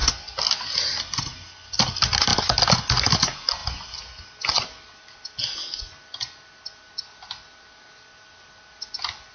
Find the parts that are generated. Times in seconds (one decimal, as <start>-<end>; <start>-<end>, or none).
none